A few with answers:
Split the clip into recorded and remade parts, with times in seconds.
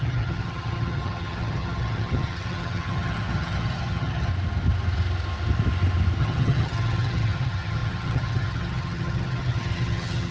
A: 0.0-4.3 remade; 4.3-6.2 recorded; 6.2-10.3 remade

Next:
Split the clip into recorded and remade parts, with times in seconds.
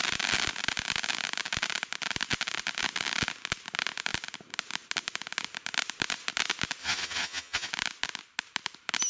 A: 0.0-6.8 recorded; 6.8-7.7 remade; 7.7-9.1 recorded